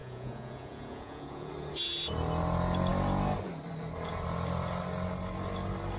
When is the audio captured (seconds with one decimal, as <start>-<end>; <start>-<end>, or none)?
1.5-6.0